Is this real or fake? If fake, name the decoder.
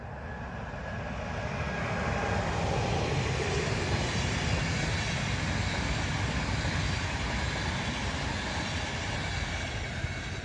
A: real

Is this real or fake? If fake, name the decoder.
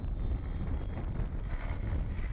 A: real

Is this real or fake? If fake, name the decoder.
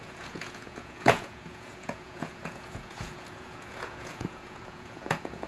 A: fake, vocoder, Vocos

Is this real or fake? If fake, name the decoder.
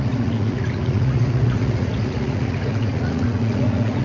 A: fake, vocoder, Vocos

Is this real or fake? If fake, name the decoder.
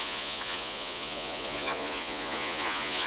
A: fake, vocoder, Vocos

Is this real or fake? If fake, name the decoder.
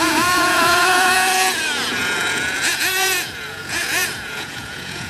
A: fake, vocoder, Vocos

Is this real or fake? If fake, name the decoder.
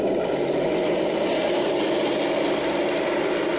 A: real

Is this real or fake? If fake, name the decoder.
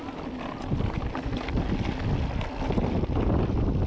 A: real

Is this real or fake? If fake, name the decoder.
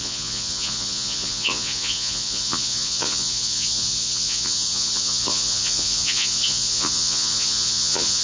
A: fake, vocoder, Vocos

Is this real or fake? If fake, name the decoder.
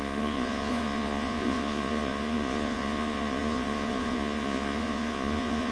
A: fake, vocoder, Vocos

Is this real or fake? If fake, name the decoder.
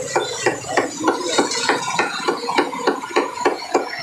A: fake, vocoder, Vocos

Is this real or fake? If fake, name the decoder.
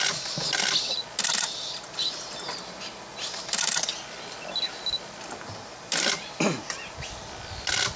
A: real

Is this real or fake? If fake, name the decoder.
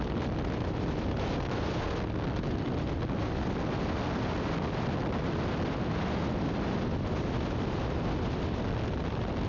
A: real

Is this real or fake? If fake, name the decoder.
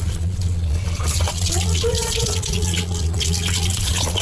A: fake, vocoder, Vocos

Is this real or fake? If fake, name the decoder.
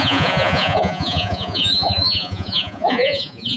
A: fake, vocoder, Vocos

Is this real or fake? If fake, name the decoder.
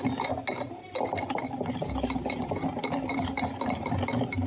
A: real